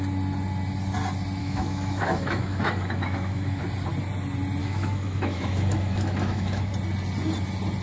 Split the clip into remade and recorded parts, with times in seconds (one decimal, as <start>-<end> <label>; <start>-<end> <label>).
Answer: 0.0-1.4 recorded; 1.4-3.6 remade; 3.6-4.6 recorded; 4.6-6.7 remade; 6.7-7.8 recorded